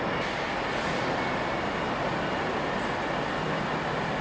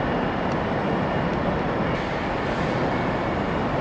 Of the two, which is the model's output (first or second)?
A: second